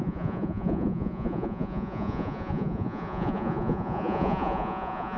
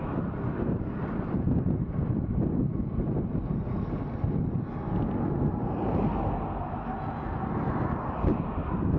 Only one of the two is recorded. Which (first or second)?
second